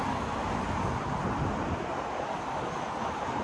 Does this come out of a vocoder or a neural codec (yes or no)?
no